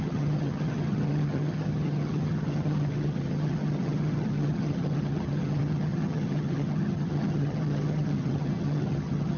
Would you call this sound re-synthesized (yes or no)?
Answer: yes